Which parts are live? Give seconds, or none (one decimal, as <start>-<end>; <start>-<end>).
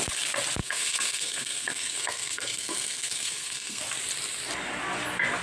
0.0-0.6; 3.8-5.4